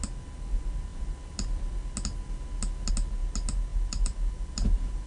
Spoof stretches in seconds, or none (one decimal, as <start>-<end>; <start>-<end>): 3.7-5.1